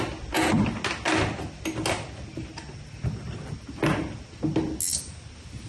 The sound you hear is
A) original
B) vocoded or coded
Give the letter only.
A